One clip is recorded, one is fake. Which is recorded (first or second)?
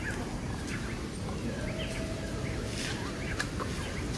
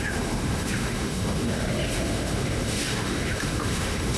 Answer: first